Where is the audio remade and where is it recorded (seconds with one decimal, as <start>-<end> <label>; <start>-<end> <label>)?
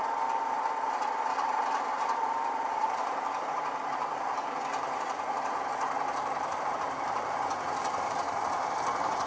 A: 0.0-2.0 recorded; 2.0-9.3 remade